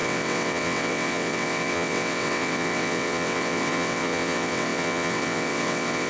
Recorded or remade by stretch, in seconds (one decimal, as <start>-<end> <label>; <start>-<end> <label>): 0.0-6.1 remade